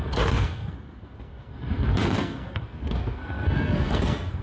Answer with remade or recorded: remade